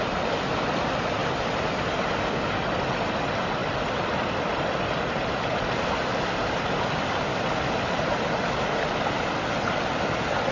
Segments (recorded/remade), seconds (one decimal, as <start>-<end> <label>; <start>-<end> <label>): 0.0-1.2 recorded; 1.2-3.1 remade; 3.1-10.5 recorded